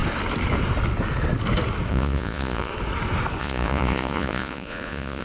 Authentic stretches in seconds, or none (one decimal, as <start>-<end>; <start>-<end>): 0.0-1.9; 2.7-3.4